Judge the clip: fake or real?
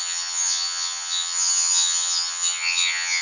fake